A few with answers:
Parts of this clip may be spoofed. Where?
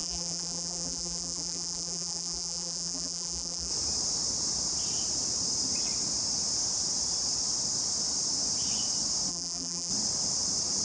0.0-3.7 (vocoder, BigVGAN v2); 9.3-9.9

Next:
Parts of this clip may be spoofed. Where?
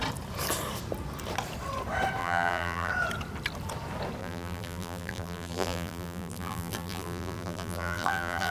2.2-2.9 (vocoder, BigVGAN v2); 4.2-8.5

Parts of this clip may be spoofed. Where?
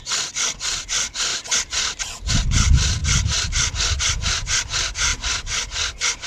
1.3-2.3 (vocoder, BigVGAN v2)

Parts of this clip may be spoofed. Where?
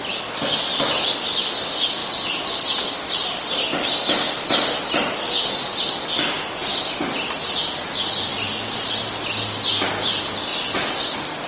2.0-4.9 (vocoder, BigVGAN v2); 8.3-9.0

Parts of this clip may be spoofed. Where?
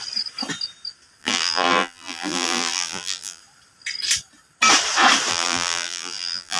1.2-3.4 (vocoder, BigVGAN v2); 5.3-6.6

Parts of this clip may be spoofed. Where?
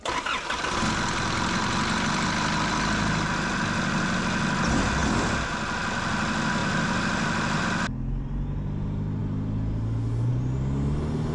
none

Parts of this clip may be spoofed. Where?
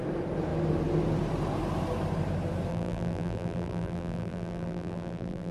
2.7-5.5 (vocoder, BigVGAN v2)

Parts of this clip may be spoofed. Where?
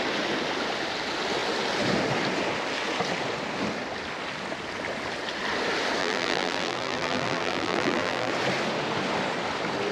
6.0-8.3 (vocoder, BigVGAN v2)